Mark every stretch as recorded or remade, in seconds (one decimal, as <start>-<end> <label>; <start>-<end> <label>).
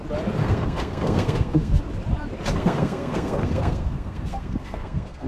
0.0-0.4 recorded; 0.4-1.8 remade; 1.8-2.6 recorded; 2.6-5.3 remade